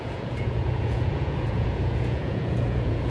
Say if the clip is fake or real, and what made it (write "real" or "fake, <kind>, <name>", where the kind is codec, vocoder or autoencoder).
fake, vocoder, Vocos